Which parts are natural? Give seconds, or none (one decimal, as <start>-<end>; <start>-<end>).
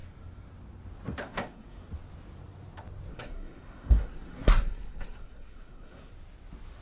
0.0-1.2; 1.9-3.1; 6.1-6.8